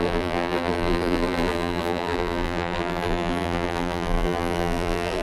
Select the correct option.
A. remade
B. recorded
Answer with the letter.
A